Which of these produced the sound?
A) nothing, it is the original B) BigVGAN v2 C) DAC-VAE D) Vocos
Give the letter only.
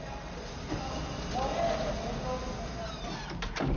A